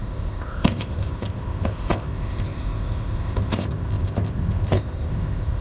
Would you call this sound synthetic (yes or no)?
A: yes